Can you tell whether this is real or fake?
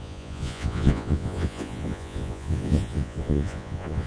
fake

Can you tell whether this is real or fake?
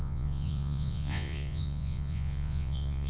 fake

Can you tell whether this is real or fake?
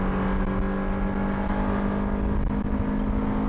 real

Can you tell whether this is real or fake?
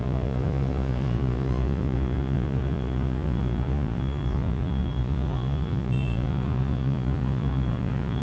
fake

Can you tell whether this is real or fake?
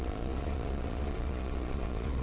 fake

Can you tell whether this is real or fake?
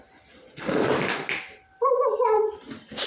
real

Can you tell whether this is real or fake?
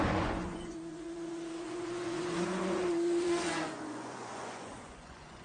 fake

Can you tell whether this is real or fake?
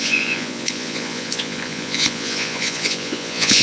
fake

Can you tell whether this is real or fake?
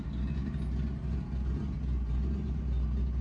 real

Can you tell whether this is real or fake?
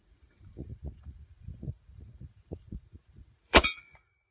fake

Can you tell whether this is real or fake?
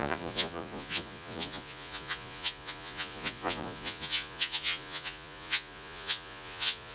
fake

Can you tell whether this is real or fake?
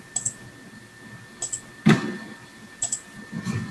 real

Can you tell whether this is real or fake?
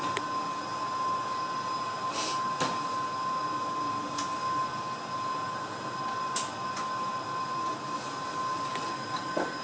real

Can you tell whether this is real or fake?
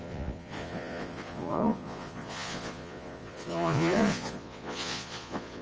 fake